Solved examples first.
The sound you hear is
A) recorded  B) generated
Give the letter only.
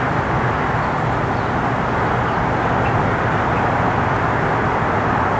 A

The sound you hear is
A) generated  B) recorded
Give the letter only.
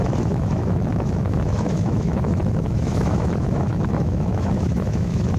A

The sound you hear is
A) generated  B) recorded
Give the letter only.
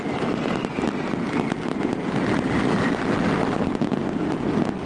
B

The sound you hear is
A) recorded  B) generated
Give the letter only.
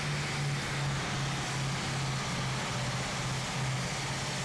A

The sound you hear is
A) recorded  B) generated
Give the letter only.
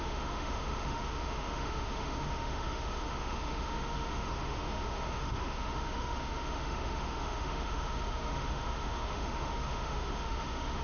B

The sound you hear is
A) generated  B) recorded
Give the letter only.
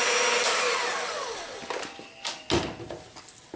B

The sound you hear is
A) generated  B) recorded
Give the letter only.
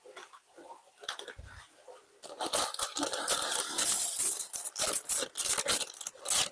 B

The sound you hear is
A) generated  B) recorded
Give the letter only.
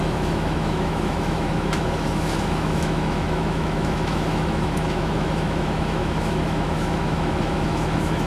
A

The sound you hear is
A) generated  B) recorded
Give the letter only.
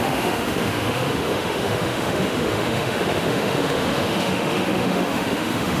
A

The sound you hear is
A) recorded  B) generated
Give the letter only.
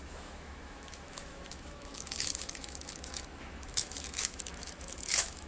B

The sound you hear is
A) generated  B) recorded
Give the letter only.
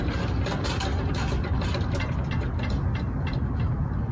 B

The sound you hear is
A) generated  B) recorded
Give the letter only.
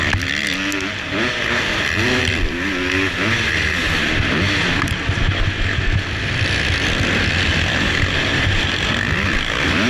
B